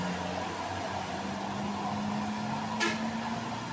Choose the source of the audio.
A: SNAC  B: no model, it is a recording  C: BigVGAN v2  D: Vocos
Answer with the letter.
B